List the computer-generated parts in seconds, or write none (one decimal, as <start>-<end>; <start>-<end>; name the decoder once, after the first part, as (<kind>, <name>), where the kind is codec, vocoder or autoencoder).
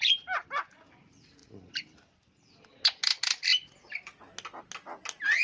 none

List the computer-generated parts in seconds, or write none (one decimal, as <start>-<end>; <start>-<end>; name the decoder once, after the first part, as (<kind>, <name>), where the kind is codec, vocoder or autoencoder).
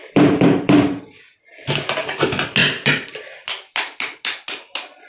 0.0-1.4 (vocoder, BigVGAN v2); 2.6-3.2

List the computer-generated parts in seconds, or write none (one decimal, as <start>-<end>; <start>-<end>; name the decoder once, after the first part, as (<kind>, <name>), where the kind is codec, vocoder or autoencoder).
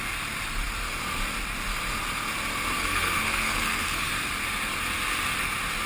2.7-4.1 (codec, SNAC)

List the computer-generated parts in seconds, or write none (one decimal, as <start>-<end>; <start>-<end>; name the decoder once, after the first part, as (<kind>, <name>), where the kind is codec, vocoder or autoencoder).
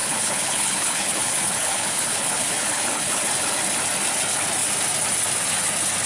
0.0-3.2 (codec, HILCodec)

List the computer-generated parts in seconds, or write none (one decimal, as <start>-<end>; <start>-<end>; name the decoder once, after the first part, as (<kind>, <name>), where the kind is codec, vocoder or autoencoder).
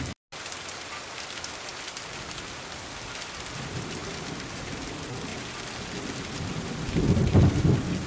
none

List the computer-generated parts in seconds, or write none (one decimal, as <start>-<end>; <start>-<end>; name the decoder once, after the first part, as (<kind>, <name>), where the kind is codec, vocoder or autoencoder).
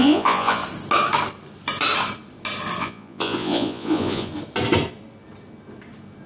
0.0-0.6 (vocoder, Vocos); 2.8-4.3